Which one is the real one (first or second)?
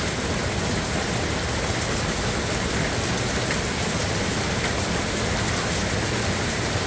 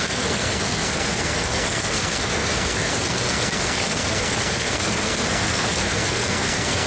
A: first